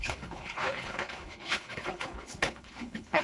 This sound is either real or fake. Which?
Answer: fake